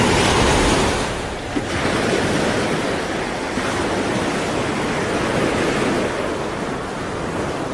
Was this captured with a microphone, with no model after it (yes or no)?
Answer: yes